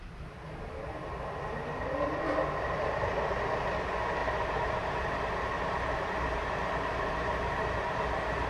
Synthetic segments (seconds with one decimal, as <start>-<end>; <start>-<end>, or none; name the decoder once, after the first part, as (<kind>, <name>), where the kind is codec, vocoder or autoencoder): 4.2-8.5 (vocoder, BigVGAN v2)